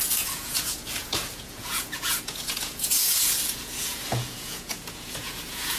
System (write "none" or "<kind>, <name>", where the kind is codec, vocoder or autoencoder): vocoder, Vocos